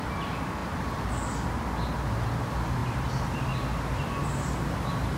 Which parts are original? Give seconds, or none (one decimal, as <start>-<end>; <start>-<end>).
0.0-5.2